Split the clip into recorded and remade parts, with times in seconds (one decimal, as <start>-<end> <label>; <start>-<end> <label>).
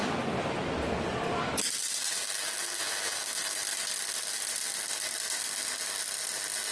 0.0-6.7 recorded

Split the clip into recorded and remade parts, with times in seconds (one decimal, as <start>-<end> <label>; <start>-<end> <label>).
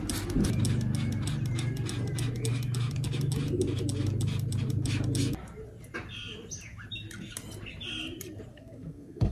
0.0-8.5 recorded; 8.5-9.3 remade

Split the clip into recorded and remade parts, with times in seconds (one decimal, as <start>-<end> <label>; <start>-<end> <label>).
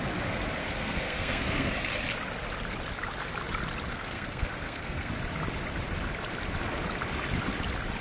0.0-0.6 recorded; 0.6-1.7 remade; 1.7-3.9 recorded; 3.9-5.1 remade; 5.1-8.0 recorded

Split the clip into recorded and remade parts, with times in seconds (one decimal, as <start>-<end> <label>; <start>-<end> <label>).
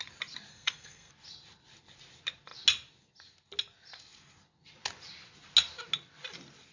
0.0-0.5 recorded; 0.5-1.1 remade; 1.1-6.7 recorded